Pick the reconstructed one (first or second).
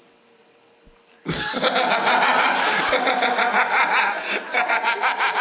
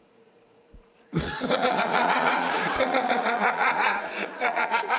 second